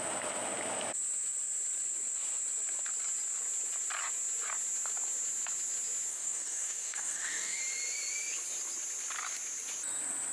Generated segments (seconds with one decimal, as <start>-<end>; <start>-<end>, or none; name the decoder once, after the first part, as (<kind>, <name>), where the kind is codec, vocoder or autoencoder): 6.1-7.6 (codec, DAC)